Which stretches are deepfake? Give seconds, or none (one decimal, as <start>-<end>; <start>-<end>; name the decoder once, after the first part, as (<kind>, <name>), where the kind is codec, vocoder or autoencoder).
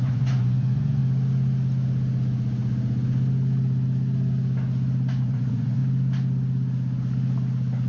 0.0-1.0 (vocoder, Vocos); 5.2-5.8